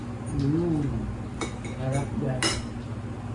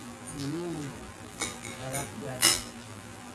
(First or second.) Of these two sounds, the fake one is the second